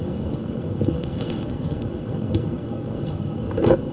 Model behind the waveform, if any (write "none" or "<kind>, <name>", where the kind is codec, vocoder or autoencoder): codec, SNAC